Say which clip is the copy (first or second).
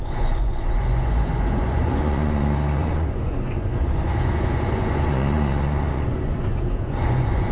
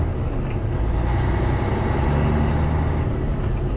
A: first